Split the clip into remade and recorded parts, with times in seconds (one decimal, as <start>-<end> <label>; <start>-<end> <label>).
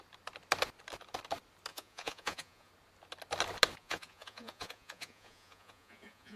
0.0-1.7 recorded; 1.7-2.7 remade; 2.7-3.8 recorded; 3.8-6.4 remade